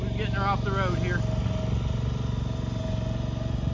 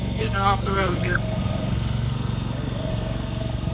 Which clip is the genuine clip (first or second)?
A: first